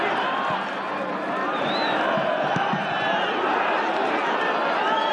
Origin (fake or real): real